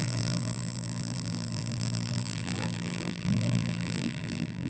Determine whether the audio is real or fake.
fake